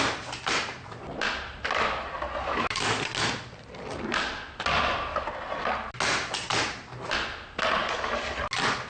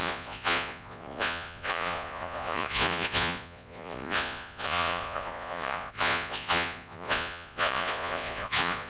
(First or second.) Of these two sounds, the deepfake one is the second